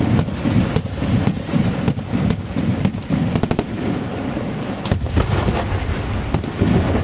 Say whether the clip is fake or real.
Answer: real